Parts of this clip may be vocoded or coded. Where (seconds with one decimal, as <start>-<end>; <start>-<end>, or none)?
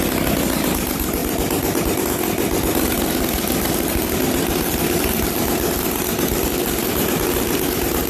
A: none